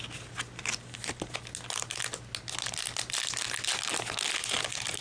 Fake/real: real